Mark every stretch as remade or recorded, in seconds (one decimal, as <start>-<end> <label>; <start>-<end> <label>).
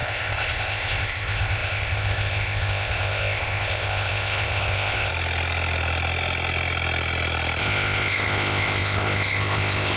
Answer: 0.0-5.1 remade; 5.1-7.6 recorded; 7.6-10.0 remade